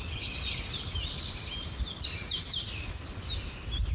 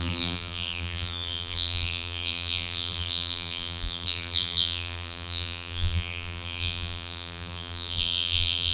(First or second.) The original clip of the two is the first